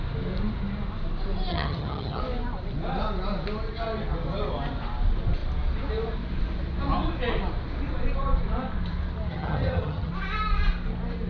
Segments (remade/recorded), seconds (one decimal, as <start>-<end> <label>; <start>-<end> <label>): 0.0-1.5 recorded; 1.5-2.2 remade; 2.2-9.3 recorded; 9.3-10.1 remade; 10.1-11.3 recorded